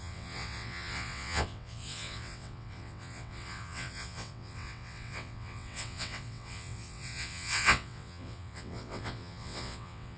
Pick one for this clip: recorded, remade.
remade